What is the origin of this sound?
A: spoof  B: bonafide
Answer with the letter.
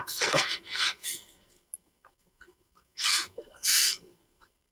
A